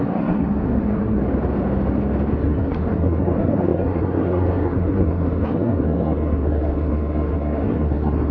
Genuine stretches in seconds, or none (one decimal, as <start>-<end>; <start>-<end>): 1.2-2.3